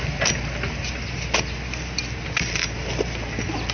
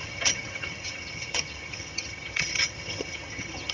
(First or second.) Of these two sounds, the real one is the first